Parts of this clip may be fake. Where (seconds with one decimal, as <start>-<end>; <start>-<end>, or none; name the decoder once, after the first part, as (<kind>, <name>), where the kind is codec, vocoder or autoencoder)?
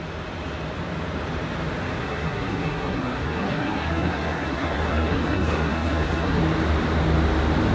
2.0-6.4 (codec, SNAC)